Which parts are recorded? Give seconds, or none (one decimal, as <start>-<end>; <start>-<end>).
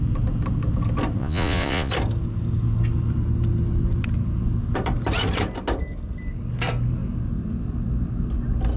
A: 0.0-1.2; 1.9-8.8